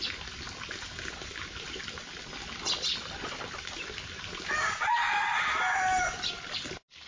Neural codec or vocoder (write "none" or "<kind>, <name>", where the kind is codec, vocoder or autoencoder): none